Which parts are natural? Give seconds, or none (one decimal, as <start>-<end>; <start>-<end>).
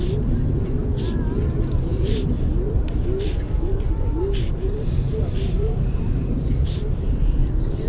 7.4-7.9